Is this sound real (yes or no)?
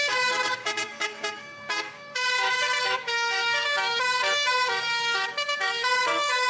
no